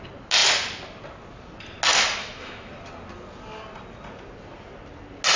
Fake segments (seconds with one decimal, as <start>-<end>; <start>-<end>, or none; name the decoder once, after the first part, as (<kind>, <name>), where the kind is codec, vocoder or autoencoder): 2.2-2.7 (autoencoder, DAC-VAE)